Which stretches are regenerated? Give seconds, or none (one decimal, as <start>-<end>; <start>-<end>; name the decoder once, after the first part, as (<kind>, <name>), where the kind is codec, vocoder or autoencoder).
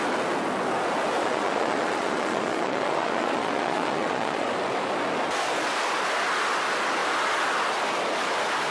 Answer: 1.2-4.5 (vocoder, Vocos)